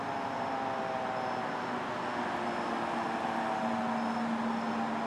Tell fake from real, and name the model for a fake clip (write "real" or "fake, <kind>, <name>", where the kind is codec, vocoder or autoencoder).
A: real